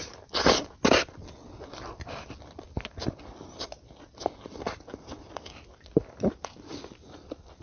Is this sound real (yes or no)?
yes